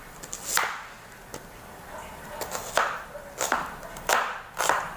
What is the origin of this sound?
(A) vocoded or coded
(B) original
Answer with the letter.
B